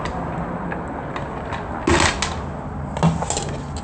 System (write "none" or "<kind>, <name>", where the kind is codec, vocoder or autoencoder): none